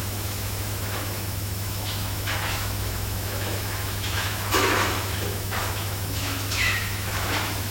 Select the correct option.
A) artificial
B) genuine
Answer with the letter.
A